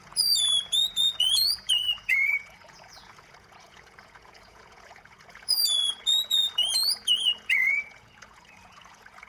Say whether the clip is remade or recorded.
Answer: remade